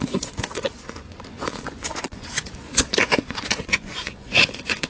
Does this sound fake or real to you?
fake